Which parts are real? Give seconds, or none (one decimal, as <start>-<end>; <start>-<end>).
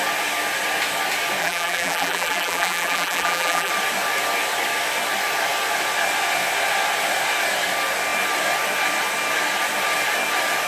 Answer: 0.0-1.4; 3.7-10.7